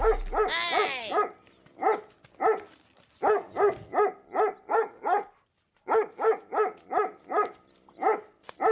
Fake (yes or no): no